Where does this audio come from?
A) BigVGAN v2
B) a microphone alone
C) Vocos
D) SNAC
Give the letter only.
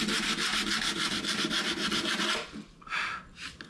B